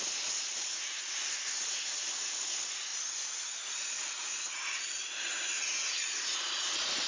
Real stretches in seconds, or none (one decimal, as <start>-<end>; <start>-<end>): 2.9-3.7